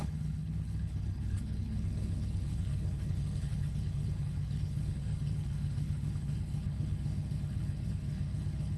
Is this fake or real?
fake